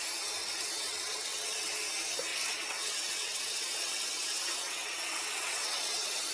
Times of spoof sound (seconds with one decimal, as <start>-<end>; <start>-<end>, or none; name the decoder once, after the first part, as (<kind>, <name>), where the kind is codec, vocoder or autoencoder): 0.4-1.7 (vocoder, WaveNeXt); 2.3-6.3